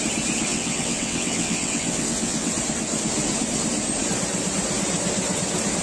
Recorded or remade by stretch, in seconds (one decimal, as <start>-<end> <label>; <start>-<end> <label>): 0.0-0.5 recorded; 0.5-2.5 remade; 2.5-5.8 recorded